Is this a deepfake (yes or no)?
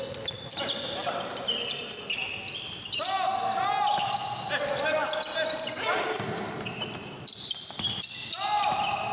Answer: no